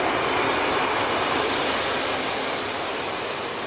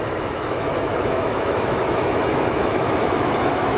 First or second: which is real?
first